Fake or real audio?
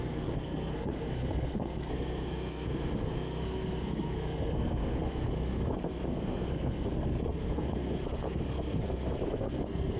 fake